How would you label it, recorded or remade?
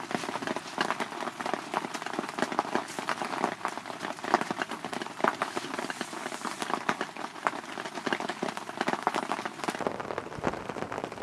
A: recorded